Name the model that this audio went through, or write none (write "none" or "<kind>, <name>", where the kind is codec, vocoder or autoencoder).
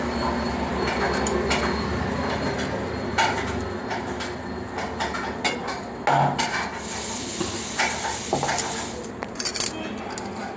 none